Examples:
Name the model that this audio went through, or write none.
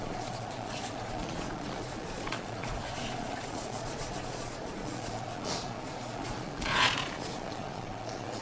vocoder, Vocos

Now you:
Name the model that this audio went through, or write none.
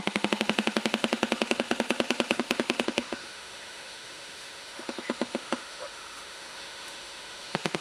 autoencoder, DAC-VAE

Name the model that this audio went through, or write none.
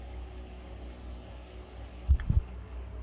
codec, DAC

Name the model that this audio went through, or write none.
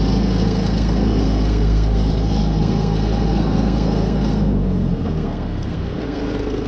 codec, SNAC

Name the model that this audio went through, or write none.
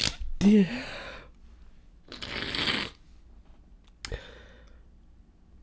none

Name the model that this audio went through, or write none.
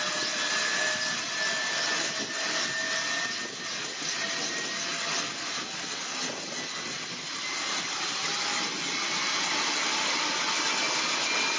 none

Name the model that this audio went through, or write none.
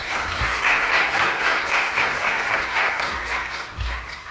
codec, SNAC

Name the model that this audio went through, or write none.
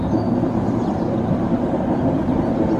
none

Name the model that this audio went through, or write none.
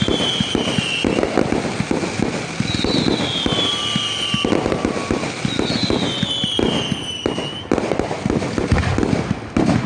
none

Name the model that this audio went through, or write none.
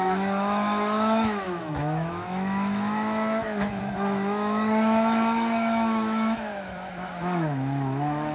autoencoder, DAC-VAE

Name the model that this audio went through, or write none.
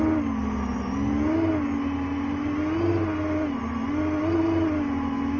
none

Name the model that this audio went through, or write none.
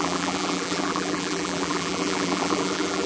vocoder, BigVGAN v2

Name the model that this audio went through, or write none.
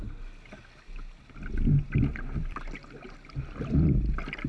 none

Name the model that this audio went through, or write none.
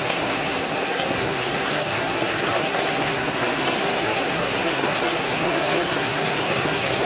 codec, SNAC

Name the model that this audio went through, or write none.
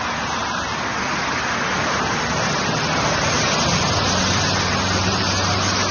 none